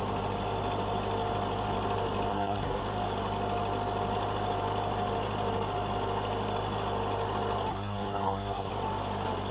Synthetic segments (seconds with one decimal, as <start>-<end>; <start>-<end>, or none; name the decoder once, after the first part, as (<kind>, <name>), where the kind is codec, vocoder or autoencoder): 2.3-2.8 (codec, SNAC); 7.7-8.7